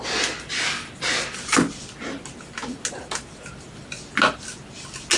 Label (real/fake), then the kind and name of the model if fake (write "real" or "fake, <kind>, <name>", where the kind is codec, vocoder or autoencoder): real